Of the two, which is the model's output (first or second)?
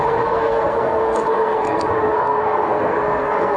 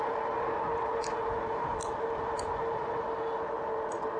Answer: first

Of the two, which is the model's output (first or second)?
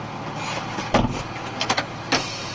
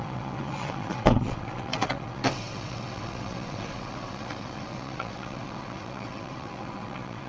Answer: second